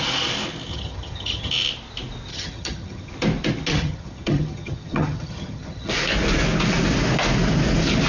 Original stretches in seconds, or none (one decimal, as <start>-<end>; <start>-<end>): 0.0-0.7; 1.5-2.3; 3.1-3.7; 5.9-8.1